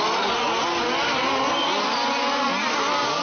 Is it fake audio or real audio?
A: real